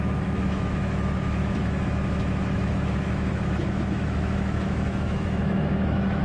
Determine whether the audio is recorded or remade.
remade